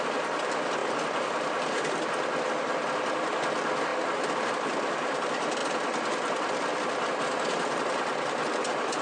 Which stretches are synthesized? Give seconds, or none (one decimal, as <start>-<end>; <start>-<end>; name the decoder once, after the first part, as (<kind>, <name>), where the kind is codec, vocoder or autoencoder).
none